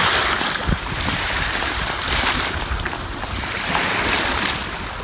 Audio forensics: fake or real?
fake